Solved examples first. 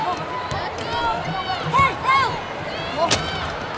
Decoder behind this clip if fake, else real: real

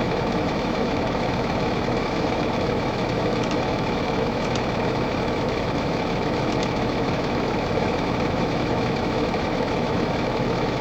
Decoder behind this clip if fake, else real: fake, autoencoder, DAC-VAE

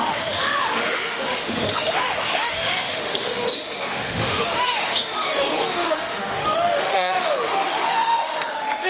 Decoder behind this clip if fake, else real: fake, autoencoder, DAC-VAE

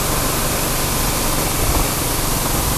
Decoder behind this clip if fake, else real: real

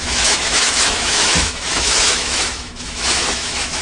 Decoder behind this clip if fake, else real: fake, autoencoder, DAC-VAE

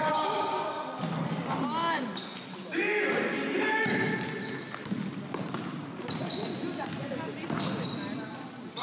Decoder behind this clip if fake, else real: real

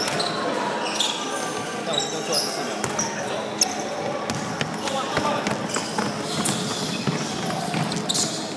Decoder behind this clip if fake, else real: real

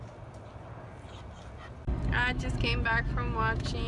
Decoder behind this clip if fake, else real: real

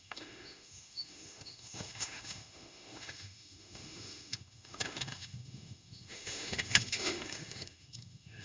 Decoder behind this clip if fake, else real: fake, autoencoder, DAC-VAE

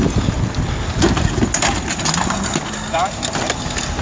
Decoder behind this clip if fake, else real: real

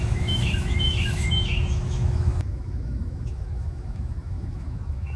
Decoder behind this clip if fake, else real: fake, autoencoder, DAC-VAE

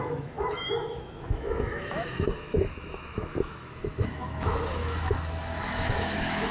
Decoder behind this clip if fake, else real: fake, autoencoder, DAC-VAE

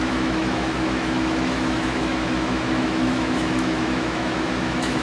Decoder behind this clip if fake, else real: fake, autoencoder, DAC-VAE